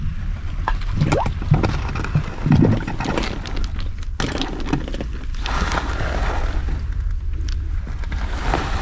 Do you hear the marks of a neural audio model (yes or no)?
no